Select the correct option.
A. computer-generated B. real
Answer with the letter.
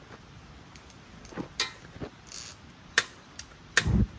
B